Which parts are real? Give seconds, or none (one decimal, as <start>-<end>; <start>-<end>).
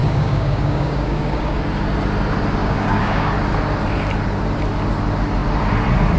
1.6-2.6; 3.3-6.2